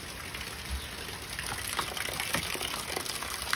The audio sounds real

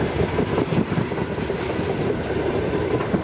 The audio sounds fake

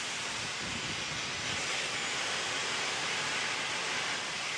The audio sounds real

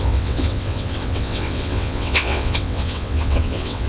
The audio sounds fake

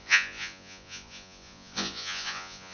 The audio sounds fake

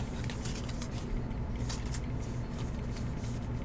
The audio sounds real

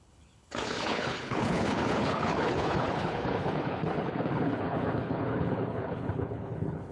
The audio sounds fake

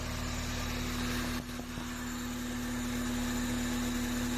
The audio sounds real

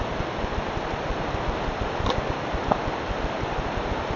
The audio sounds real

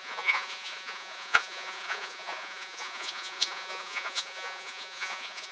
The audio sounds fake